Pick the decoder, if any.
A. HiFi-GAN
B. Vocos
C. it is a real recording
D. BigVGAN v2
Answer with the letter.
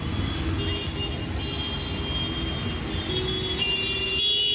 C